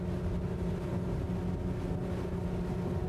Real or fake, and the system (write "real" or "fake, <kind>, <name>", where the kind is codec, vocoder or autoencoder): real